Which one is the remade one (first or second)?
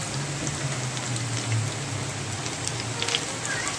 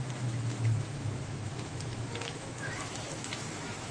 second